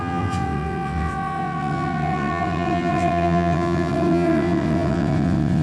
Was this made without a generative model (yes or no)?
no